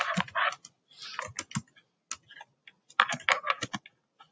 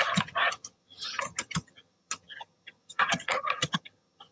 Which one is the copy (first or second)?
second